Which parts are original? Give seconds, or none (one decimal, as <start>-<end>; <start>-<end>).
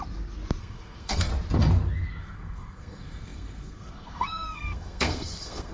0.0-0.6; 1.3-2.2